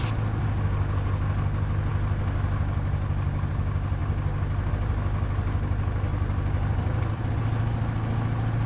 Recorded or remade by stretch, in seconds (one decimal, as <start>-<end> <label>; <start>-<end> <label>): 0.0-6.1 recorded; 6.1-7.3 remade; 7.3-8.7 recorded